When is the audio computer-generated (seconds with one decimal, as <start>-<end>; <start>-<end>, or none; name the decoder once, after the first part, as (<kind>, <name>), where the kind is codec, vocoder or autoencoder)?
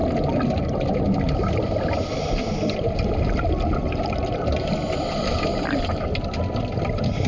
none